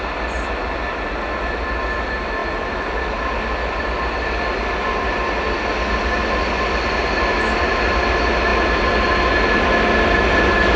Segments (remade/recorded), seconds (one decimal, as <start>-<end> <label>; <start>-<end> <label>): 0.0-10.8 recorded